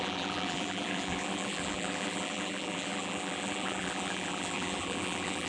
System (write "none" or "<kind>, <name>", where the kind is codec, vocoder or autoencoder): vocoder, BigVGAN v2